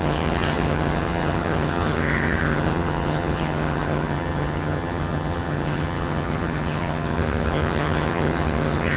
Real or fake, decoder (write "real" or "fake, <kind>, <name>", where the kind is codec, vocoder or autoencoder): fake, vocoder, HiFi-GAN